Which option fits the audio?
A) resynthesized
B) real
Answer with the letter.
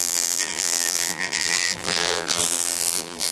A